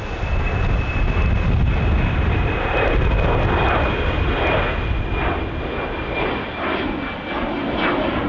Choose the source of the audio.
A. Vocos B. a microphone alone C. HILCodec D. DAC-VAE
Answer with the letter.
B